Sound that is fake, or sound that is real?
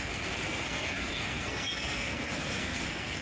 fake